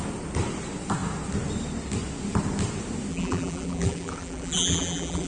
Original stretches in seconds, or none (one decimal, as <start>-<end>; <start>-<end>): 0.0-3.1